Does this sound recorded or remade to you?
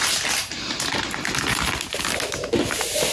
recorded